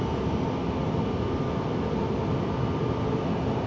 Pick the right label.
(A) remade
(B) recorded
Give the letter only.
B